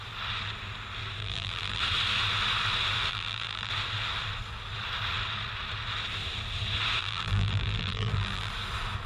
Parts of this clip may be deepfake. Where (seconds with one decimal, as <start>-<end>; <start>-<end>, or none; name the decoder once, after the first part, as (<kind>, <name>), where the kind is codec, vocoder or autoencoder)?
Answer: 1.2-1.8 (vocoder, BigVGAN v2); 3.1-3.7; 7.0-8.5

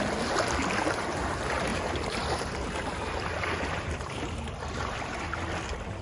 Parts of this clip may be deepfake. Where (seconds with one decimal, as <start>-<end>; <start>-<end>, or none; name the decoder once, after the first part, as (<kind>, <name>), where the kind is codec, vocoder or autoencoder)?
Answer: 1.7-5.3 (vocoder, BigVGAN v2)

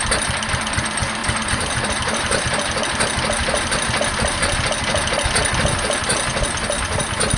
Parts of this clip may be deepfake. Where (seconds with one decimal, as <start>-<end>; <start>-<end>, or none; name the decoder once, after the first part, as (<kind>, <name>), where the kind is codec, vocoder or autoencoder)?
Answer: 1.2-2.4 (vocoder, BigVGAN v2); 3.4-4.5

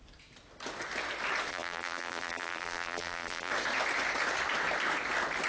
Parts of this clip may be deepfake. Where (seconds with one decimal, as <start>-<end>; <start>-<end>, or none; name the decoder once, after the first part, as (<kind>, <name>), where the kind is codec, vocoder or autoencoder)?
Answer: 1.5-3.5 (vocoder, BigVGAN v2)